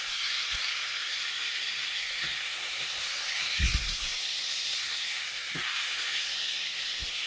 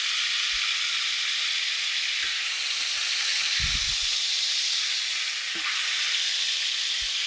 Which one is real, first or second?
second